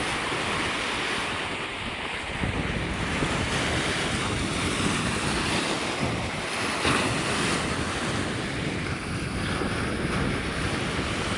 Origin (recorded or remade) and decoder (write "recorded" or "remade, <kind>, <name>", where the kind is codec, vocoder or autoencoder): recorded